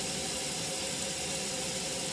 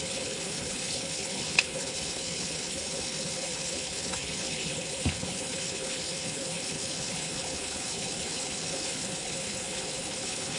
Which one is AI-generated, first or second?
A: second